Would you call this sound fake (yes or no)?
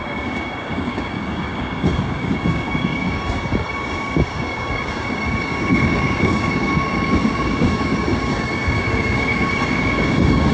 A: yes